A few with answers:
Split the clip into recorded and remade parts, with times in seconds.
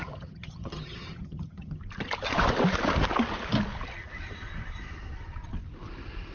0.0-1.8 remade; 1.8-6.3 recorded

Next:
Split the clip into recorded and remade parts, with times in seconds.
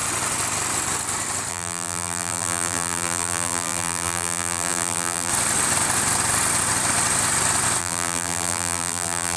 0.0-1.5 recorded; 1.5-5.3 remade; 5.3-7.8 recorded; 7.8-9.4 remade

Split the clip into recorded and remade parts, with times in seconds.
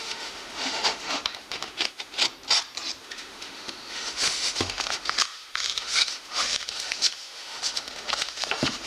0.0-2.2 remade; 2.2-3.0 recorded; 3.0-8.9 remade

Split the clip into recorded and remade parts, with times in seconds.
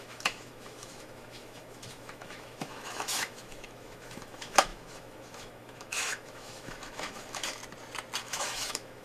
0.0-7.6 remade; 7.6-8.2 recorded; 8.2-9.0 remade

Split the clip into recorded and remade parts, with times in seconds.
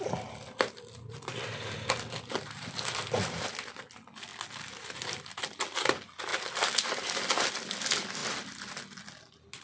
0.0-9.6 recorded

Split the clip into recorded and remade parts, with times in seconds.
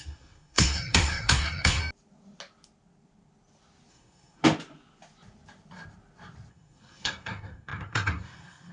0.0-1.8 remade; 1.8-3.9 recorded; 3.9-4.4 remade; 4.4-6.5 recorded; 6.5-8.7 remade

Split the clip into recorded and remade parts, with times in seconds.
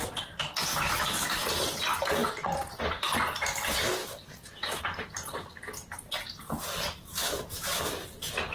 0.0-0.7 recorded; 0.7-1.4 remade; 1.4-4.0 recorded; 4.0-4.8 remade; 4.8-7.2 recorded; 7.2-7.8 remade; 7.8-8.5 recorded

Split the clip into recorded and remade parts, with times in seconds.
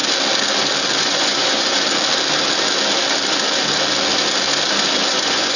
0.0-1.0 recorded; 1.0-1.7 remade; 1.7-5.1 recorded; 5.1-5.6 remade